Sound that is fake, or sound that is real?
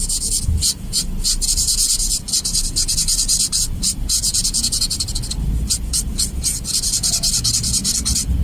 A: fake